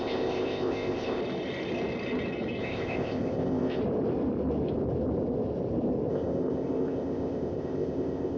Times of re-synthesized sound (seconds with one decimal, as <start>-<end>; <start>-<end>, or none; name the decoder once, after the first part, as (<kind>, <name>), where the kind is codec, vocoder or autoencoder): 0.0-1.2 (codec, ZipCodec); 2.6-3.8; 6.1-8.4